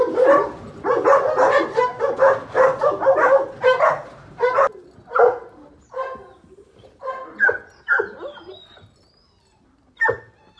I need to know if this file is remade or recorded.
recorded